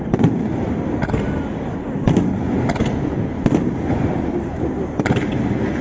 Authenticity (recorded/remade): recorded